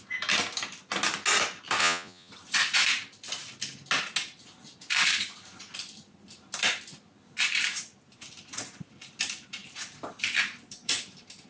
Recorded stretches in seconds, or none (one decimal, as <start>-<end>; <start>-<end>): 0.0-1.8; 2.3-11.5